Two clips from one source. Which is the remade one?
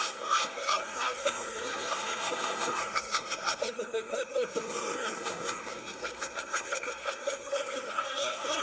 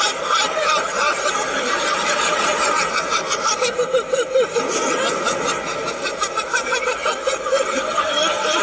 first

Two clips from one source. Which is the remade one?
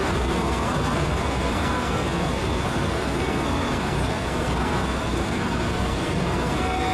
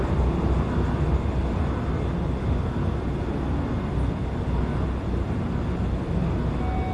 first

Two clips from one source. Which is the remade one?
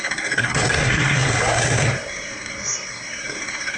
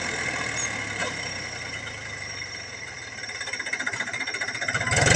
first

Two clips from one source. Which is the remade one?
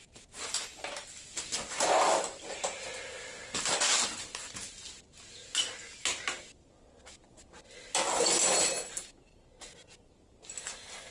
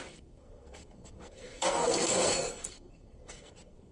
second